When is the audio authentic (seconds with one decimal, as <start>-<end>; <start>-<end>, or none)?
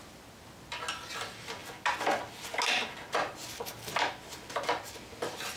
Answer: 0.0-5.6